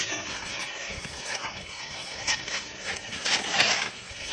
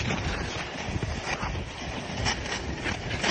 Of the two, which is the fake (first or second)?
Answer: first